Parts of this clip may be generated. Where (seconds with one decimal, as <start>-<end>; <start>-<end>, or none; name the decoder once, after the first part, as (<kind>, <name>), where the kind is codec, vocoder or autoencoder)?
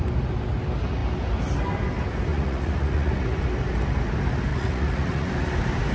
2.3-3.4 (vocoder, Vocos); 4.5-5.3